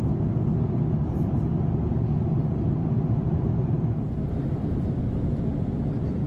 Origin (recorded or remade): recorded